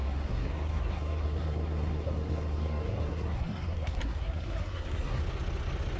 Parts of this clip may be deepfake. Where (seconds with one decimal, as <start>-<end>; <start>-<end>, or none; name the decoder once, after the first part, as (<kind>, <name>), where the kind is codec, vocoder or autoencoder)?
0.0-5.2 (codec, SNAC)